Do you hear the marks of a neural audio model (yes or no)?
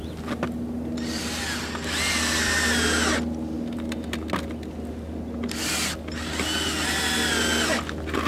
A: no